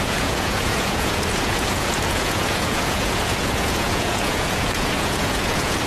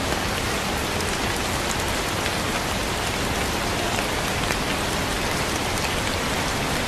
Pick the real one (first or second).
second